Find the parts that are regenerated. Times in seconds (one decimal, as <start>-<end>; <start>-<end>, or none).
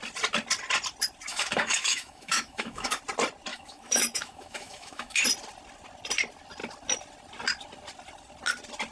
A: 1.3-3.0; 3.5-5.2